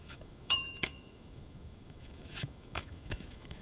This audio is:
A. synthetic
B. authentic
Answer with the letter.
A